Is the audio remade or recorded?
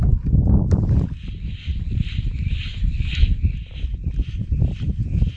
recorded